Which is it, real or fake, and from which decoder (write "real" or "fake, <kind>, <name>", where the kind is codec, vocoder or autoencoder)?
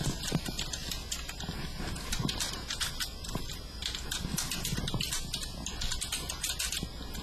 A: real